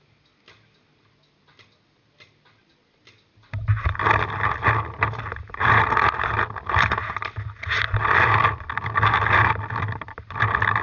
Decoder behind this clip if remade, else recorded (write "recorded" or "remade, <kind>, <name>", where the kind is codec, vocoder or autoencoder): recorded